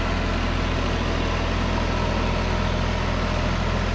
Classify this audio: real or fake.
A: real